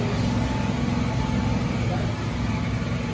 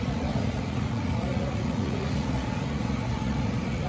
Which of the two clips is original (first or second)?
first